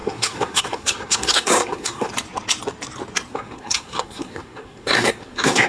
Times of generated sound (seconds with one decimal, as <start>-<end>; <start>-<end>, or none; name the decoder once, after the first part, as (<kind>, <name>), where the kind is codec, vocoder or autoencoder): 0.0-2.1 (codec, SNAC); 3.3-5.7